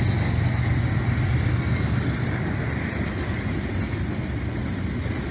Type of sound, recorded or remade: recorded